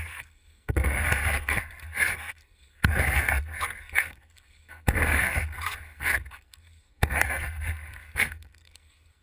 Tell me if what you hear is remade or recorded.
remade